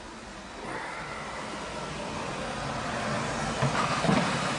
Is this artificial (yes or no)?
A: no